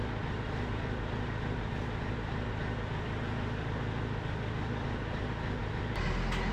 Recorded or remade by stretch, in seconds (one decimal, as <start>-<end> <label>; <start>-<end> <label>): 0.0-6.5 recorded